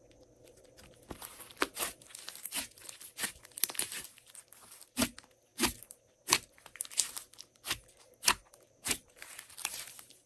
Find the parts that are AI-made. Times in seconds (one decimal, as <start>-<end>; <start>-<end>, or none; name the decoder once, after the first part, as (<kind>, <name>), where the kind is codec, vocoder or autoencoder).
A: none